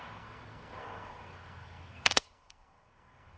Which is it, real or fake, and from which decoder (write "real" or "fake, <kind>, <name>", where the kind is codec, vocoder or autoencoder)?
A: fake, codec, SNAC